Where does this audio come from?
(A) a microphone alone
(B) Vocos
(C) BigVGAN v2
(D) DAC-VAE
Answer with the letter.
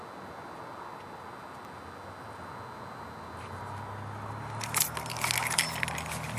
A